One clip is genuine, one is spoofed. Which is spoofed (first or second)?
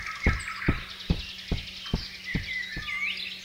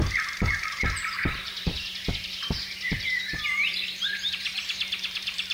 second